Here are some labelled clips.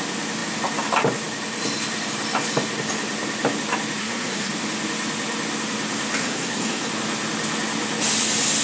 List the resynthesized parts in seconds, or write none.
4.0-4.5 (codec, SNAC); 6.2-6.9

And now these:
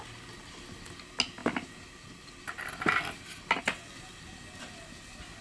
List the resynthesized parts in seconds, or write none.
none

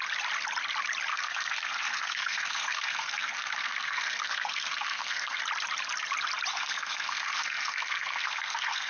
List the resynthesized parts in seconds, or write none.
1.1-5.4 (codec, SNAC); 6.5-8.9

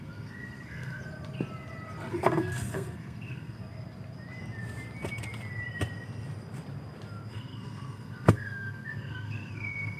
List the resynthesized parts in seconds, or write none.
0.0-1.0 (codec, SNAC); 2.1-3.6; 7.3-10.0

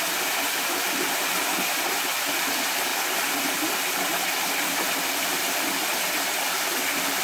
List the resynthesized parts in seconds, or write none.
none